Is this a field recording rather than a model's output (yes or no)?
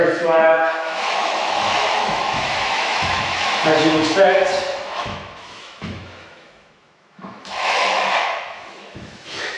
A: no